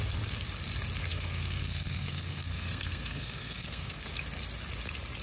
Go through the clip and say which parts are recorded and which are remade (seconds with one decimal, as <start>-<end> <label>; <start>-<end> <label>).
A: 0.0-1.0 recorded; 1.0-4.1 remade; 4.1-5.2 recorded